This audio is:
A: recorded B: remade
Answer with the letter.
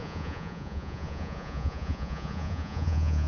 B